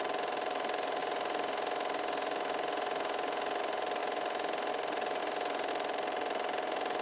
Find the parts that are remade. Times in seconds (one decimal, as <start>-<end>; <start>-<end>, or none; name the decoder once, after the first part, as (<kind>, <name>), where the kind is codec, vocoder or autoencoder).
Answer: 0.0-1.0 (vocoder, BigVGAN v2); 3.6-4.0; 4.7-5.2; 5.7-7.0